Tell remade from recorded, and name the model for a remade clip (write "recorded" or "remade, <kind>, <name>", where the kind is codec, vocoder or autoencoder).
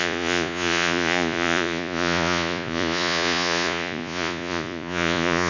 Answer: remade, vocoder, Vocos